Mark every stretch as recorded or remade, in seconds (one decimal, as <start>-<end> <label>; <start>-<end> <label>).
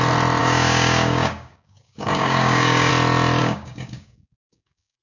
0.0-0.4 recorded; 0.4-2.9 remade; 2.9-3.4 recorded; 3.4-5.0 remade